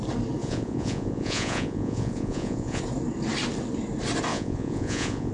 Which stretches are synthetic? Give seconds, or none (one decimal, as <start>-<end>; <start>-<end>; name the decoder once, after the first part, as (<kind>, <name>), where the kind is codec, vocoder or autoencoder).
0.4-2.8 (vocoder, Vocos); 4.3-5.3

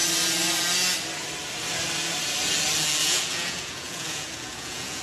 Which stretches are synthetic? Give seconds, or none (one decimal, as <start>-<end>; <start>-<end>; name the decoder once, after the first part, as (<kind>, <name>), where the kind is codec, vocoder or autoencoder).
3.0-5.0 (vocoder, Vocos)

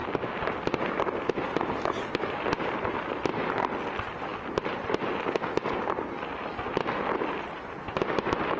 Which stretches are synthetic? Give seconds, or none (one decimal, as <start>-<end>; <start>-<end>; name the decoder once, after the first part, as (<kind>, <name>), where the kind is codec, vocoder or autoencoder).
none

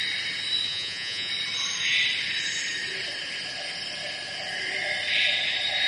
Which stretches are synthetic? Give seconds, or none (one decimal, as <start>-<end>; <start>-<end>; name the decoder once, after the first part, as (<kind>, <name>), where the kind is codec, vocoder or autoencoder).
0.7-1.3 (vocoder, Vocos)

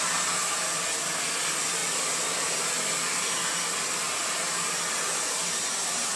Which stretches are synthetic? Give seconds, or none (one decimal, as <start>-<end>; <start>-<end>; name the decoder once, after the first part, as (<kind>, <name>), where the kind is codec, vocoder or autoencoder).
none

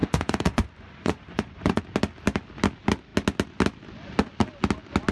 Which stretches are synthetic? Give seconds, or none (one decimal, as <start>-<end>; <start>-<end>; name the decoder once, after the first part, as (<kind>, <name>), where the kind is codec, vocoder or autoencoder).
0.0-1.8 (vocoder, Vocos)